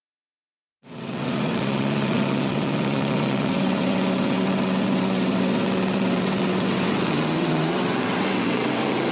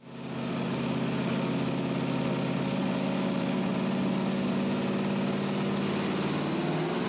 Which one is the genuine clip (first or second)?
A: second